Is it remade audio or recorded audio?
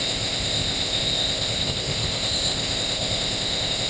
remade